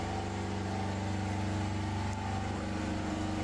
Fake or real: real